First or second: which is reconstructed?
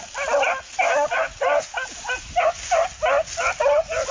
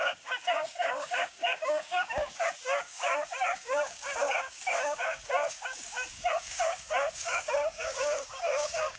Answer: second